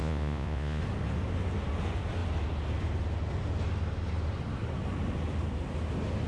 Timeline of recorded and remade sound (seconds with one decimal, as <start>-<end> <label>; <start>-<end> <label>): 0.0-0.8 remade; 0.8-6.3 recorded